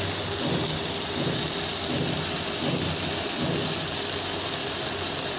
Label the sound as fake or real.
real